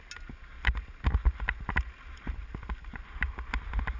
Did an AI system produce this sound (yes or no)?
no